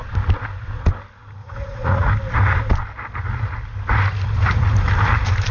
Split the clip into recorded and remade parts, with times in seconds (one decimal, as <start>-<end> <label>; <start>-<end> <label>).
0.0-1.4 recorded; 1.4-2.1 remade; 2.1-5.5 recorded